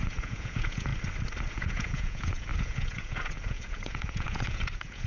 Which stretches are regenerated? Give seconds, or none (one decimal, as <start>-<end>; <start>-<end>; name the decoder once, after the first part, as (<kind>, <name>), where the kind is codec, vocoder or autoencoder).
0.0-0.9 (vocoder, Vocos); 1.5-5.1